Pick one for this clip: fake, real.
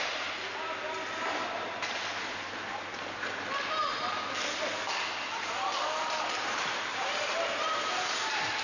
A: real